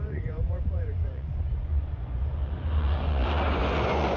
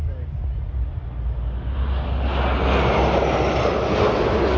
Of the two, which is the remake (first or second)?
first